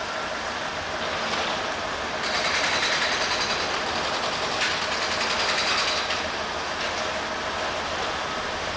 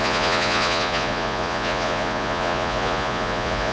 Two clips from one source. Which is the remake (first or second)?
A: second